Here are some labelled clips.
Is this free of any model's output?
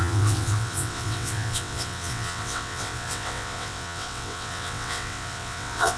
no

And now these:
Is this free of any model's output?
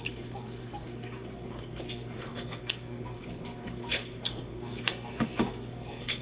no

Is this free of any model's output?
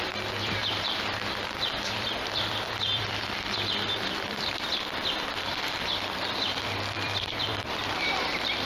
no